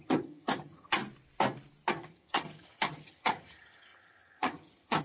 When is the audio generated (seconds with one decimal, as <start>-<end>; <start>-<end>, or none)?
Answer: 0.0-1.0; 1.9-5.0